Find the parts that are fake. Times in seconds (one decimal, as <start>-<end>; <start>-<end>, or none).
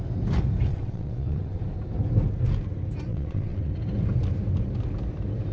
0.7-1.6; 3.1-3.7